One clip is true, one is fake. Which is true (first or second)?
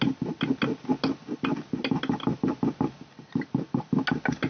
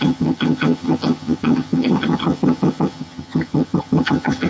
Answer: first